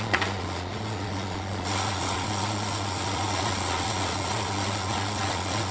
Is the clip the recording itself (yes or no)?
no